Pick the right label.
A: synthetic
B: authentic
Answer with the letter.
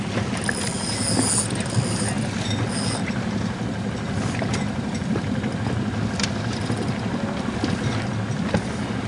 B